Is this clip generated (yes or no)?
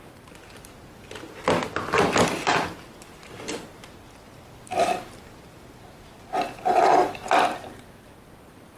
no